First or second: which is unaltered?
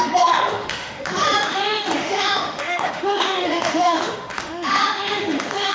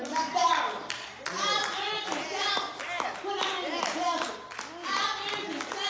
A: second